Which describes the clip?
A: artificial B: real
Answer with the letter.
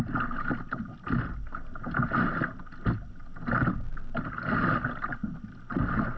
B